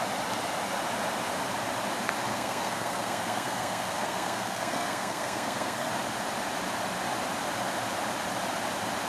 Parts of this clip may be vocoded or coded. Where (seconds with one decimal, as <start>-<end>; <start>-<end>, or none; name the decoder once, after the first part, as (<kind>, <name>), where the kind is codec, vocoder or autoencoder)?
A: 2.3-5.9 (codec, SNAC)

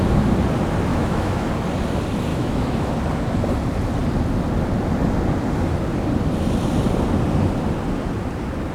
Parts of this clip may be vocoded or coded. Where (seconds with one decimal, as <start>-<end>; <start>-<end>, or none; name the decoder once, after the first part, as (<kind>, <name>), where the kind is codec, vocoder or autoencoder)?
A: 0.9-1.5 (autoencoder, DAC-VAE); 2.3-2.9

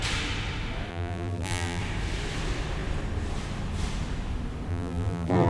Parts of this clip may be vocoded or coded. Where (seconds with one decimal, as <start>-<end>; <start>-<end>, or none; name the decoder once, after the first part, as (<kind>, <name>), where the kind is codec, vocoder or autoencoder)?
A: 0.9-1.8 (vocoder, BigVGAN v2); 4.7-5.5

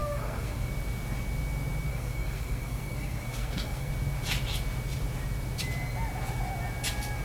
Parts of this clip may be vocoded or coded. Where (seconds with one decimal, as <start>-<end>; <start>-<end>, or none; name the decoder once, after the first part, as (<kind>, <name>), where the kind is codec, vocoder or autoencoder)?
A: 0.0-0.7 (codec, SNAC); 1.9-3.9

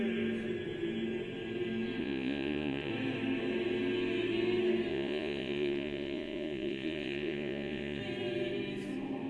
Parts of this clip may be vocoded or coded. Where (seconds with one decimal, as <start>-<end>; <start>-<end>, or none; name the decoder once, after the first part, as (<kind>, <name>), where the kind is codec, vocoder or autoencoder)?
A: 2.0-2.9 (vocoder, Vocos); 4.9-8.0

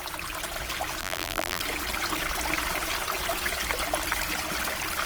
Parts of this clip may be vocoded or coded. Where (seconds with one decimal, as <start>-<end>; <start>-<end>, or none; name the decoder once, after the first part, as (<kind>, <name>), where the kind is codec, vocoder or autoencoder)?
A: 1.0-1.6 (vocoder, BigVGAN v2)

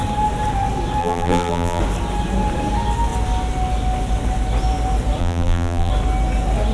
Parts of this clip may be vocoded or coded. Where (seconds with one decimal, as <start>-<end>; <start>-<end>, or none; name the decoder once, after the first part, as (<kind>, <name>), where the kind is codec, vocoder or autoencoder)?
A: 1.0-1.8 (vocoder, BigVGAN v2); 5.2-5.9

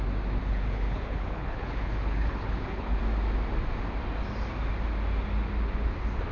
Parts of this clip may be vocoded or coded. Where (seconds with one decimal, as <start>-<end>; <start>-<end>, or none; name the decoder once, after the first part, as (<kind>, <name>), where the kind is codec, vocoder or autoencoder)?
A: 0.4-3.0 (codec, HILCodec)